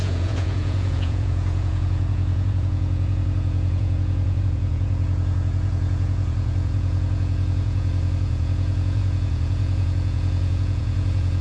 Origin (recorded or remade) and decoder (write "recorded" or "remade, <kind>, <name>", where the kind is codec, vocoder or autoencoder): remade, vocoder, Vocos